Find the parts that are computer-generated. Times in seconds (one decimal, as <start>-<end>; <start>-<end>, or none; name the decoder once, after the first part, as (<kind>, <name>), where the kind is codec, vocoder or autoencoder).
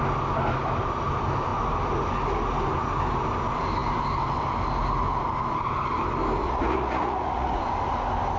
6.4-7.6 (vocoder, Vocos)